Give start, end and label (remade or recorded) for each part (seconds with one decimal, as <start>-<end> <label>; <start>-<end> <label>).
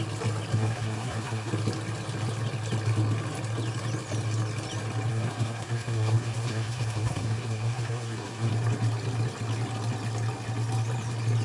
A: 0.0-0.5 recorded; 0.5-1.5 remade; 1.5-5.1 recorded; 5.1-8.5 remade; 8.5-11.4 recorded